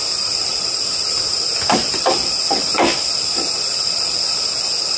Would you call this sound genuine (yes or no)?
no